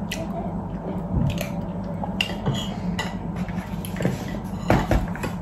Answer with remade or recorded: recorded